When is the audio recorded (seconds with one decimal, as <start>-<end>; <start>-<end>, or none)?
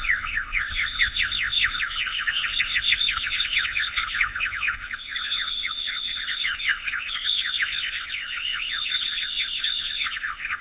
none